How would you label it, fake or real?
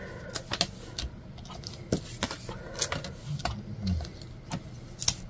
real